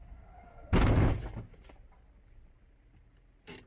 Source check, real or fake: real